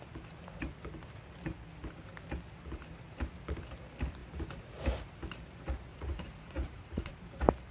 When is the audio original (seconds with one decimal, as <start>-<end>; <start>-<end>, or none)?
0.0-5.9; 7.1-7.7

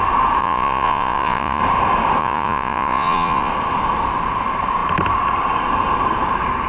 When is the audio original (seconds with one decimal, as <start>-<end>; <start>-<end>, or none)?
0.0-0.4; 1.6-2.2; 3.5-6.7

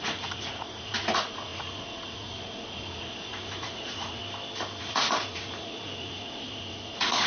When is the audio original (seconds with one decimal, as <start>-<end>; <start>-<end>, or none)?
4.2-4.8

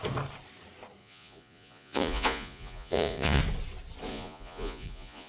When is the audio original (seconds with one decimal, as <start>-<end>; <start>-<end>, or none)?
0.0-1.0; 3.4-4.1